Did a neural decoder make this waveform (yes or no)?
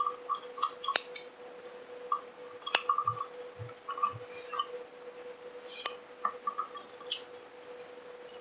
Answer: no